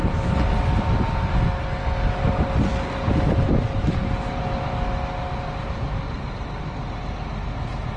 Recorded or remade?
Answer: recorded